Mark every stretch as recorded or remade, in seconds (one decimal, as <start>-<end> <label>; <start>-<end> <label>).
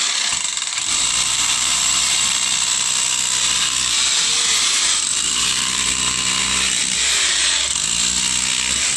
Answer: 0.0-0.8 recorded; 0.8-2.3 remade; 2.3-5.1 recorded; 5.1-6.4 remade; 6.4-9.0 recorded